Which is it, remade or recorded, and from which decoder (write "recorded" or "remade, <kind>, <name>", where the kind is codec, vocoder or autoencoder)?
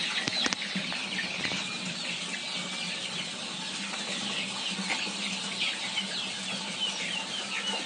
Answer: recorded